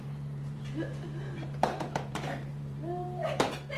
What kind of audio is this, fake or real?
fake